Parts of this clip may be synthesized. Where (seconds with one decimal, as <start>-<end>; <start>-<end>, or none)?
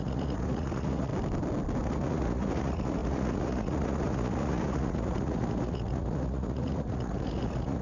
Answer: 0.0-1.1; 1.8-7.8